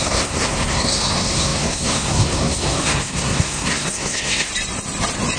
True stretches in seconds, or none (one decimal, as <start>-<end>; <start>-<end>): 4.5-5.4

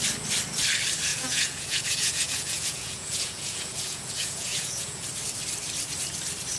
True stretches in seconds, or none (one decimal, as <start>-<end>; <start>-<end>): 0.0-1.1; 5.1-6.6